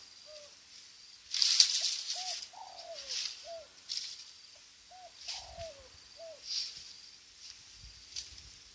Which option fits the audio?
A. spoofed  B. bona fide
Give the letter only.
B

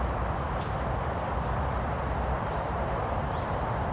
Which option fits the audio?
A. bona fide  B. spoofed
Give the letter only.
A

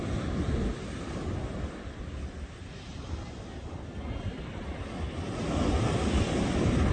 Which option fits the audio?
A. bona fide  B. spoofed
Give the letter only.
A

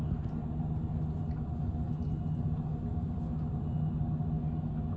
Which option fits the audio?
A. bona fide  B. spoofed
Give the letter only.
A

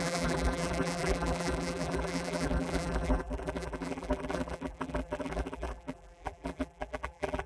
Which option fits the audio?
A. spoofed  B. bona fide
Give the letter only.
A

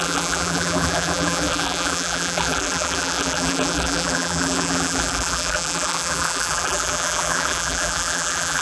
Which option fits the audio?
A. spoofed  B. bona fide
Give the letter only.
A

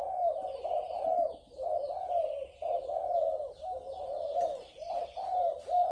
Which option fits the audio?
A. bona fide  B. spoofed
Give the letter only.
A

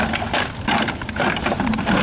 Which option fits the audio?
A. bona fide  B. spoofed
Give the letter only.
A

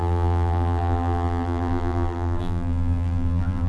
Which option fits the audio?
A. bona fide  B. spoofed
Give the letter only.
B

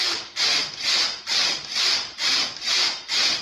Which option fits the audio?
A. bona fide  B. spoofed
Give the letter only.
A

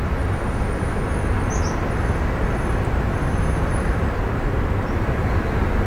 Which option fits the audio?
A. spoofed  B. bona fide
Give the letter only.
B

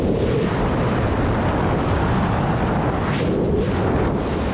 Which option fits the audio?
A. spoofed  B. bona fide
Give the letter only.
A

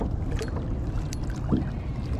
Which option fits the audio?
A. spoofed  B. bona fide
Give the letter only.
B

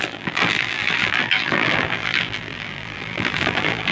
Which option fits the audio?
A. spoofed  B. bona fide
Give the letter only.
A